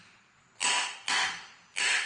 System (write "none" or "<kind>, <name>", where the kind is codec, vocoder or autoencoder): none